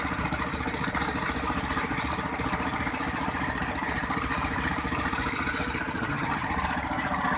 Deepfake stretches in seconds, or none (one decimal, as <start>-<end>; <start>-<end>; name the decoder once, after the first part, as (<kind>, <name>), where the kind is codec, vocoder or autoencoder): 6.0-6.5 (vocoder, HiFi-GAN)